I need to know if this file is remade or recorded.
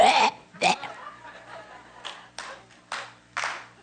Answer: recorded